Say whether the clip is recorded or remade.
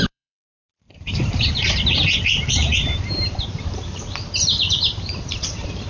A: remade